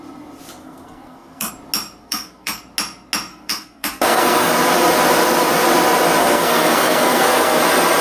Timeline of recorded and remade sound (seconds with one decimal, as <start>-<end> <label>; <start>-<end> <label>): 0.0-0.6 recorded; 0.6-1.5 remade; 1.5-2.0 recorded; 2.0-2.6 remade; 2.6-3.3 recorded; 3.3-4.5 remade; 4.5-6.2 recorded; 6.2-7.6 remade; 7.6-8.0 recorded